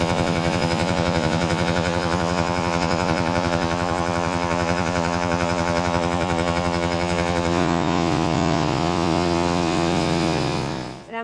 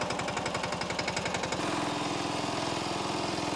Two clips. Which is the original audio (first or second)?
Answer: second